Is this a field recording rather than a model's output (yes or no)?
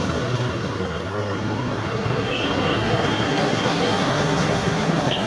no